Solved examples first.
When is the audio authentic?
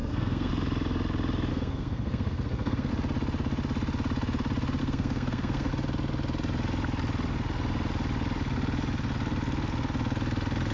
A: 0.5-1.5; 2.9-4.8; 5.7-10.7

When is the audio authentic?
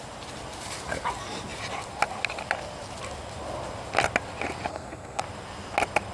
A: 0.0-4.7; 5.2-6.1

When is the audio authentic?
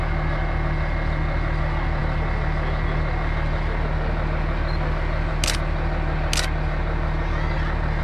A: 0.0-8.0